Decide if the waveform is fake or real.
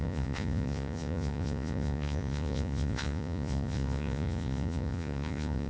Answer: fake